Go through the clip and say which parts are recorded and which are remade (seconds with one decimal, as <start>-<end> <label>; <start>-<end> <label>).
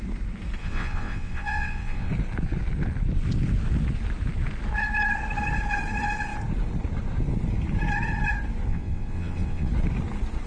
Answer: 0.0-0.6 recorded; 0.6-2.1 remade; 2.1-8.7 recorded; 8.7-9.7 remade; 9.7-10.5 recorded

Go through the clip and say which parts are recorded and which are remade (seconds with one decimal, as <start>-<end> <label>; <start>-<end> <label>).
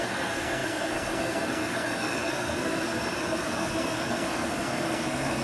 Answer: 0.0-5.4 remade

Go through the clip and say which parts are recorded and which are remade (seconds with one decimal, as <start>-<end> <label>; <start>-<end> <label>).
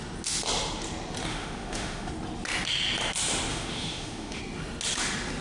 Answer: 0.0-1.3 recorded; 1.3-2.1 remade; 2.1-3.5 recorded; 3.5-4.4 remade; 4.4-5.4 recorded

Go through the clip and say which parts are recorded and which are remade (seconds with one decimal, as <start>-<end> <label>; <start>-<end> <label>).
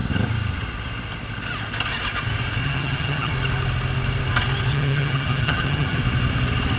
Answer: 0.0-2.6 recorded; 2.6-3.3 remade; 3.3-4.7 recorded; 4.7-6.0 remade; 6.0-6.8 recorded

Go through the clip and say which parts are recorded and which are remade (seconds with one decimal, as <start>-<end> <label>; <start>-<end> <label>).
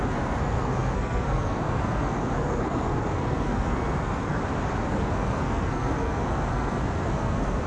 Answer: 0.0-4.4 remade; 4.4-4.9 recorded; 4.9-7.7 remade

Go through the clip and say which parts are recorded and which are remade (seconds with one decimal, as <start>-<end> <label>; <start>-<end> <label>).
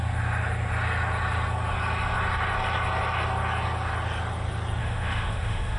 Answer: 0.0-4.8 recorded; 4.8-5.8 remade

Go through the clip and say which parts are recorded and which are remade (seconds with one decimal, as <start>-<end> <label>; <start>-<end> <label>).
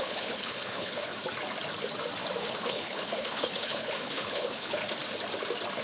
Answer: 0.0-1.1 remade; 1.1-2.4 recorded; 2.4-4.8 remade; 4.8-5.8 recorded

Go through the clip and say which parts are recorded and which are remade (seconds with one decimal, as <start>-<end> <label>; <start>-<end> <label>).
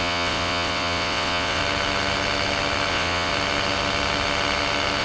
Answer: 0.0-1.6 remade; 1.6-2.9 recorded; 2.9-3.3 remade; 3.3-5.0 recorded